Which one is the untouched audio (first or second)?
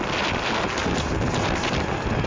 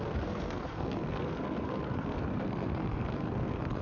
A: first